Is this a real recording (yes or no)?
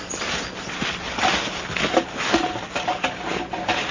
yes